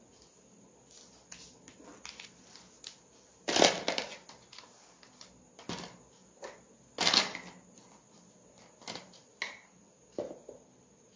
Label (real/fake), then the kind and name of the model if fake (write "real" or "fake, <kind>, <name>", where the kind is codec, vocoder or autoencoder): real